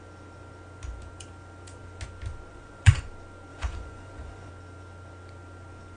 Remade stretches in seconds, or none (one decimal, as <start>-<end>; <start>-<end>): 2.5-3.1; 3.5-4.5